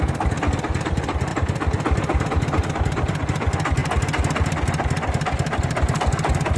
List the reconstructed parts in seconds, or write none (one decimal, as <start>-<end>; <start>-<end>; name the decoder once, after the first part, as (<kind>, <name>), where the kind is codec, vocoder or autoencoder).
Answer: 1.3-3.2 (vocoder, BigVGAN v2)